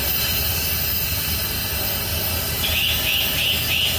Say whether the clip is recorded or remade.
recorded